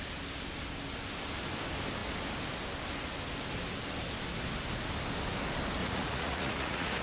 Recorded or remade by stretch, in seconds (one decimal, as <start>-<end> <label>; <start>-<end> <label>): 0.0-5.8 recorded; 5.8-7.0 remade